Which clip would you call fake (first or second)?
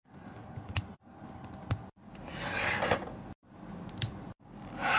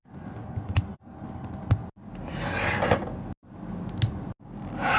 first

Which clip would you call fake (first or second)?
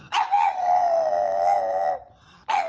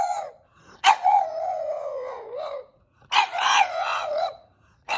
second